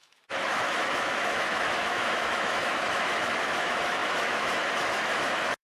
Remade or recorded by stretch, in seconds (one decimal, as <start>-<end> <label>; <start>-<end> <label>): 0.0-5.6 remade